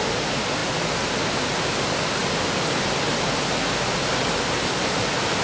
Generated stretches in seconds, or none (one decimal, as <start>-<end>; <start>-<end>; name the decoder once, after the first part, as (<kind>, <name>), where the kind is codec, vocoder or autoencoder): none